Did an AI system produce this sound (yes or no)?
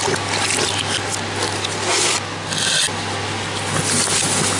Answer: no